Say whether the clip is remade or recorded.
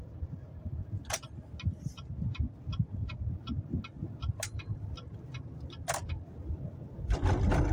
recorded